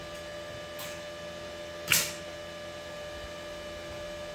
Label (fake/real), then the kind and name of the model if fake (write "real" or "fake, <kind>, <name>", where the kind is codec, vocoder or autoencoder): real